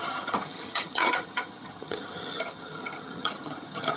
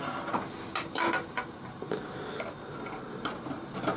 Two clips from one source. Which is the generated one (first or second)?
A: first